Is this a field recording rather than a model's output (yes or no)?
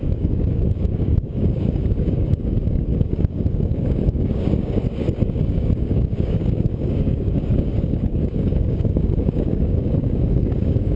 no